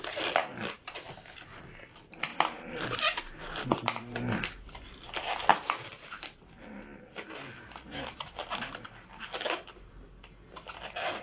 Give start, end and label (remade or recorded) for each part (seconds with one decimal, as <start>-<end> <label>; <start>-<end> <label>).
0.0-2.3 recorded; 2.3-4.7 remade; 4.7-5.5 recorded; 5.5-6.5 remade; 6.5-11.2 recorded